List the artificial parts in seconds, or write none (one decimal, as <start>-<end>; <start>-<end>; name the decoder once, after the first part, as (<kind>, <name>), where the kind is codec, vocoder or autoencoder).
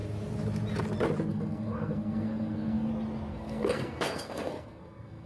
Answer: 1.3-2.9 (codec, SNAC); 3.3-5.3